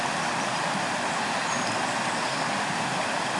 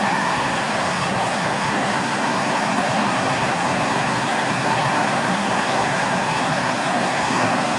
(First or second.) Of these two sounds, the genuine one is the first